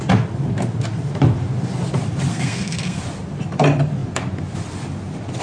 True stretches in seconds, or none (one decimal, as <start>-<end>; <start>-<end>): 0.0-2.3; 3.0-5.4